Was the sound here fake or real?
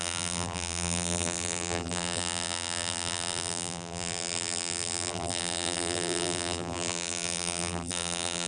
fake